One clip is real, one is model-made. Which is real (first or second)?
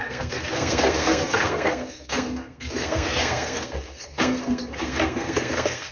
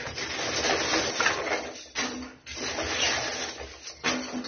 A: second